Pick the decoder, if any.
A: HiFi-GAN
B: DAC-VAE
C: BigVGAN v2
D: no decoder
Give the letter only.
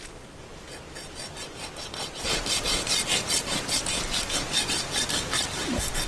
D